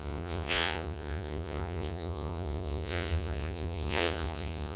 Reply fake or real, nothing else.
fake